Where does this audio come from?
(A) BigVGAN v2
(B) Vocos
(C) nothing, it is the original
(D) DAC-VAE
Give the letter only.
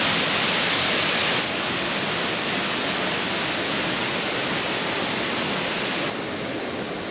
C